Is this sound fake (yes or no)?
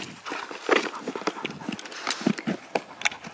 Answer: no